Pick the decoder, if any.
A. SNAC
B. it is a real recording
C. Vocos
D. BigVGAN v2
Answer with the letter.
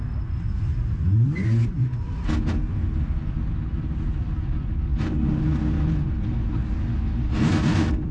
B